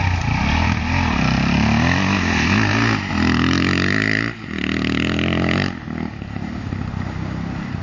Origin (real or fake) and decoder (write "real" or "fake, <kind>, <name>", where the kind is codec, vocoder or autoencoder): real